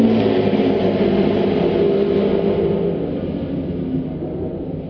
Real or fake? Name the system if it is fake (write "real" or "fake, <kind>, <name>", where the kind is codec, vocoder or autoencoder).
real